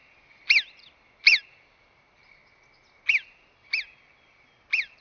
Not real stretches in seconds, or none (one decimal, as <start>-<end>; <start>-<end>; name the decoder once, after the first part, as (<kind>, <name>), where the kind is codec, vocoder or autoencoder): 1.2-2.4 (vocoder, BigVGAN v2); 4.2-5.0